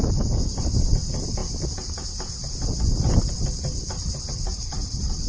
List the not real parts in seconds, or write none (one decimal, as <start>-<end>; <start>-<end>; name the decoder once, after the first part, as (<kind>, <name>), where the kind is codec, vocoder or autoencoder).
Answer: none